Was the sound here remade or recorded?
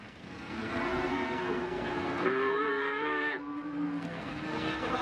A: remade